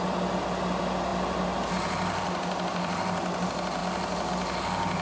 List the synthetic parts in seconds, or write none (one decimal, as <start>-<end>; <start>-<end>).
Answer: none